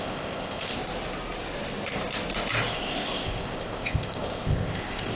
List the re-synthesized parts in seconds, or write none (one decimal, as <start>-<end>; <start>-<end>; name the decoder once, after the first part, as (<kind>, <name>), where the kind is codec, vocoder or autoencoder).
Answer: 0.0-0.8 (codec, ZipCodec); 2.7-5.2